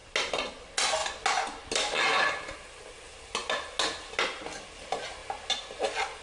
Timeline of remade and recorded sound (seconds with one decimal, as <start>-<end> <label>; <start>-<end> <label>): 0.0-6.2 recorded